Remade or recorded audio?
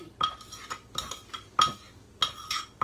recorded